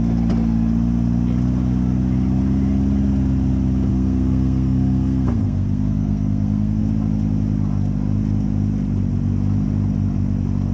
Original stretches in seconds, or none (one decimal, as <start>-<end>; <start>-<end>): 0.0-3.9; 6.8-10.7